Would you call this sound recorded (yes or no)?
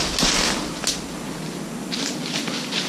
yes